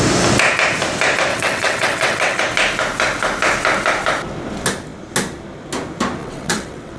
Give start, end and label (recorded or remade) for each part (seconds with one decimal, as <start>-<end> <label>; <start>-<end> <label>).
0.0-1.3 recorded; 1.3-2.4 remade; 2.4-6.2 recorded; 6.2-7.0 remade